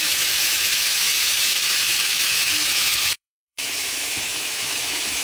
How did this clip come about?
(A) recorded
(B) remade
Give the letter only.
B